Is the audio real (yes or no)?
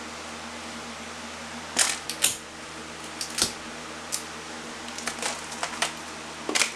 yes